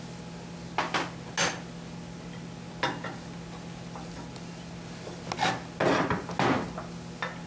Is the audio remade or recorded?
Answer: recorded